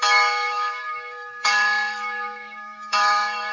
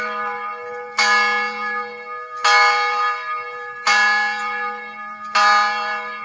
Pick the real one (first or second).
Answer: second